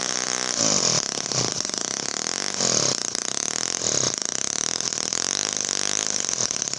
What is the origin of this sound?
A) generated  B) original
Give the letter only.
B